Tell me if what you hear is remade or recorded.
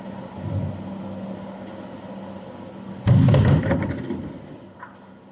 recorded